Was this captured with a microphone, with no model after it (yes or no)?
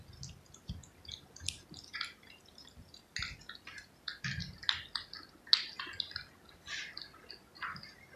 yes